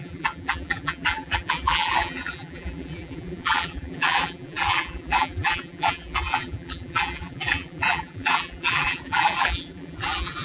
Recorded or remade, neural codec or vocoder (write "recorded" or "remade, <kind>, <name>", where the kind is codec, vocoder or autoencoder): remade, vocoder, BigVGAN v2